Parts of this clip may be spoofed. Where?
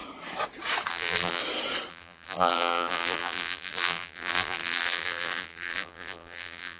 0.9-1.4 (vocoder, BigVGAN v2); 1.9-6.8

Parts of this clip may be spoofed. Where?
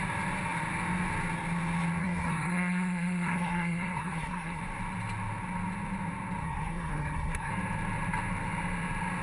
2.0-4.6 (codec, SNAC); 6.4-7.5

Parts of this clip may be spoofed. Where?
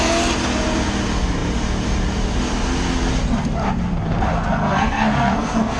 4.5-5.8 (codec, SNAC)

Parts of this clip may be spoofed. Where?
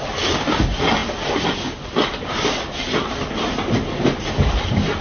none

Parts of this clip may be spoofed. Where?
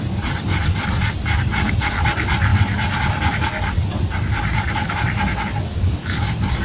none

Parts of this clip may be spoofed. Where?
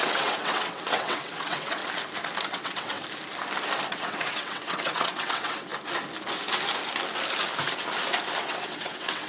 0.0-1.8 (vocoder, WaveNeXt); 2.5-3.0; 3.9-5.7; 8.4-9.3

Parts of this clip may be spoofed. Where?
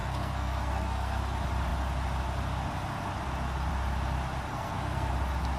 0.0-1.2 (codec, SNAC); 4.5-5.1